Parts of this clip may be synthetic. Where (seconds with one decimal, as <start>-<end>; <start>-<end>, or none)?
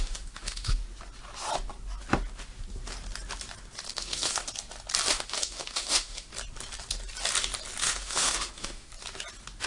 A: 0.0-0.8; 3.9-4.5; 5.1-6.3; 7.8-8.9